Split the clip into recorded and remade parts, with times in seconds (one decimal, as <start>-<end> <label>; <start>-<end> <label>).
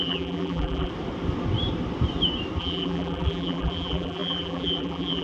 0.0-0.9 remade; 0.9-2.6 recorded; 2.6-5.2 remade